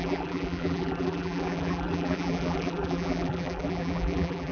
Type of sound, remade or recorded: remade